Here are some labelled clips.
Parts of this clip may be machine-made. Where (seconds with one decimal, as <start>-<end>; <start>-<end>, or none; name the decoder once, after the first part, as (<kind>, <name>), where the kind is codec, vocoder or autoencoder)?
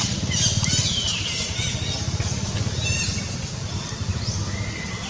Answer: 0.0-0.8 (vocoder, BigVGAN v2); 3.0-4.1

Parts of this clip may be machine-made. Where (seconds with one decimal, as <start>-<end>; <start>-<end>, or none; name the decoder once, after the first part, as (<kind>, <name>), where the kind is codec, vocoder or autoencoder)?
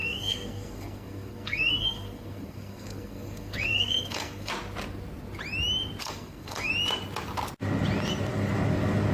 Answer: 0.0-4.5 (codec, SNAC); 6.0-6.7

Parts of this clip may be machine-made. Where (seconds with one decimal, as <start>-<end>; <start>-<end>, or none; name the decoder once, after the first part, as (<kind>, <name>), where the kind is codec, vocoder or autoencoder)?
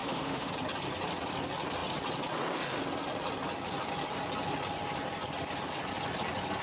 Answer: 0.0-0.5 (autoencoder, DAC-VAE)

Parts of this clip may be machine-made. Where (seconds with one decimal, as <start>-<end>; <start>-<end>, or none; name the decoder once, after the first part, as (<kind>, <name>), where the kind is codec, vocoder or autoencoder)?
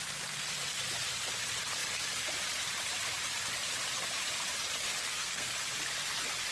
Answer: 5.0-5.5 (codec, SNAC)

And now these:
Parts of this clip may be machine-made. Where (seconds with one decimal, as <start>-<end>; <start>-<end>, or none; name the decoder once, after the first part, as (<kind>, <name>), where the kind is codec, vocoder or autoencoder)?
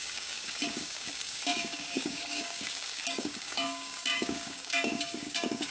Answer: 0.0-5.7 (codec, DAC)